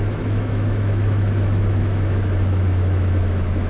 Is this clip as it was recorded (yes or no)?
no